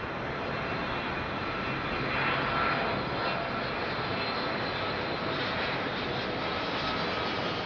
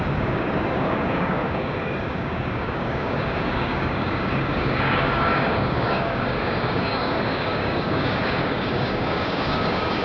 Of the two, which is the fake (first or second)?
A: second